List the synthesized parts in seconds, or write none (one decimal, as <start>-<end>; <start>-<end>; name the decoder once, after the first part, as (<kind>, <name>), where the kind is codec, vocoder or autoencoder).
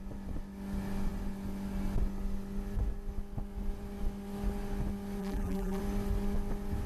5.2-5.8 (vocoder, BigVGAN v2)